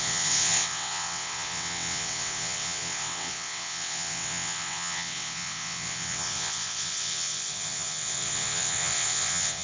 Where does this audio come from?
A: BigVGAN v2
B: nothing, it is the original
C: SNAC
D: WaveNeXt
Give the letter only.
D